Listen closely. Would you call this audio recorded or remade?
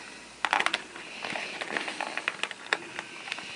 recorded